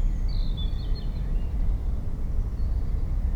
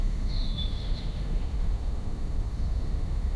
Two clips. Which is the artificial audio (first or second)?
second